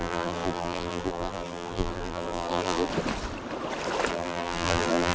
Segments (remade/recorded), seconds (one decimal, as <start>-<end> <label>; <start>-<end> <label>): 0.0-2.9 remade; 2.9-4.1 recorded; 4.1-5.1 remade